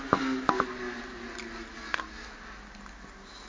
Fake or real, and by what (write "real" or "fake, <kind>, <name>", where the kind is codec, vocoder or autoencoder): real